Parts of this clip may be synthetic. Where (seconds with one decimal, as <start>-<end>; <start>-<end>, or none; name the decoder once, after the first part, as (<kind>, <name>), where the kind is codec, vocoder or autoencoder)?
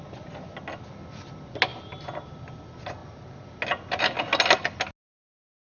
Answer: 3.0-3.6 (vocoder, BigVGAN v2)